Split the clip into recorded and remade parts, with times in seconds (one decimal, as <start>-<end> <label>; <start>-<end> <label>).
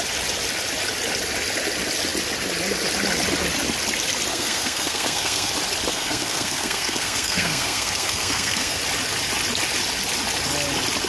0.0-4.3 recorded; 4.3-5.5 remade; 5.5-5.9 recorded; 5.9-8.8 remade; 8.8-11.1 recorded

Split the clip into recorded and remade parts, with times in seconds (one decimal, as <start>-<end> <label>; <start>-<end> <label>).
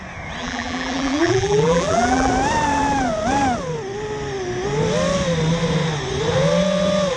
0.0-0.4 recorded; 0.4-2.3 remade; 2.3-7.2 recorded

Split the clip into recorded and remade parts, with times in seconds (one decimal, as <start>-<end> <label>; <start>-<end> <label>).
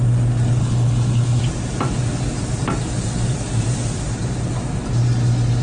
0.0-0.6 recorded; 0.6-1.4 remade; 1.4-5.6 recorded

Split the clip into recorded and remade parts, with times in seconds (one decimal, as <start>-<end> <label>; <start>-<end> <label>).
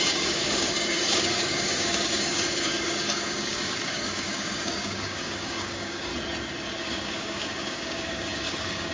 0.0-6.1 remade; 6.1-6.8 recorded; 6.8-8.9 remade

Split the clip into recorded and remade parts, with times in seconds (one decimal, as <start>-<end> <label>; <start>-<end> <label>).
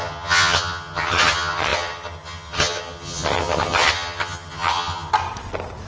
0.0-5.1 remade; 5.1-5.9 recorded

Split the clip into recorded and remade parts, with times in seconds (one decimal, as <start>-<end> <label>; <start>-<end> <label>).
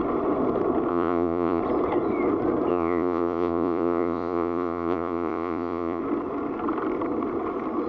0.0-0.9 recorded; 0.9-1.6 remade; 1.6-2.7 recorded; 2.7-6.0 remade; 6.0-7.9 recorded